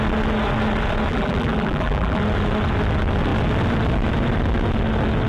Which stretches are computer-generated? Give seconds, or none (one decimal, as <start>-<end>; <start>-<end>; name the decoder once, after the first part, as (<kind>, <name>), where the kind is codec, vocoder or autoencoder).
1.1-2.2 (vocoder, BigVGAN v2)